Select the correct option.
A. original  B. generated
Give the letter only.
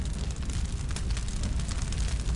A